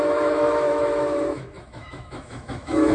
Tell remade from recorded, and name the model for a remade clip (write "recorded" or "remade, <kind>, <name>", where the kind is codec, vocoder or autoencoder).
remade, autoencoder, DAC-VAE